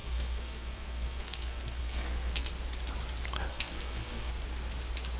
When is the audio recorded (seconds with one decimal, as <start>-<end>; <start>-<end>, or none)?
2.5-3.5; 4.3-5.2